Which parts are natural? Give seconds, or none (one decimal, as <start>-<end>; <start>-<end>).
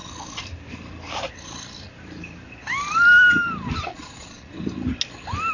0.0-3.9; 4.5-5.5